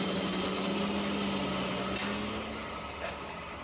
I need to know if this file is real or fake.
real